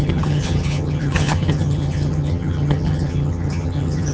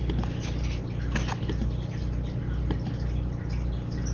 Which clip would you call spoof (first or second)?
first